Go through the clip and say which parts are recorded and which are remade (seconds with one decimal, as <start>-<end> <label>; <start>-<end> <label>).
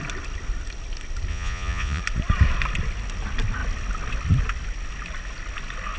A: 0.0-1.3 recorded; 1.3-2.0 remade; 2.0-6.0 recorded